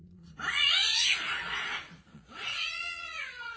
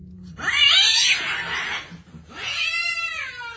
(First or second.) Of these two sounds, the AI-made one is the first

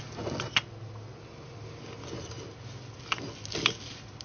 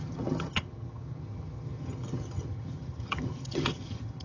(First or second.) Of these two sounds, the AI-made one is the second